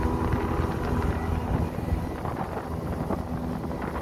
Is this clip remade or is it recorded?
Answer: recorded